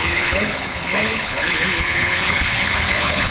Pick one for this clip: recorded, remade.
remade